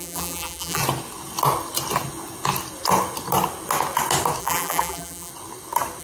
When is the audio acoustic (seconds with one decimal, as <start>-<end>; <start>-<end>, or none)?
0.8-4.4; 5.3-6.0